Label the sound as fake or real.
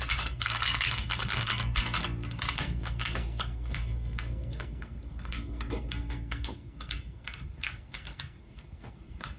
fake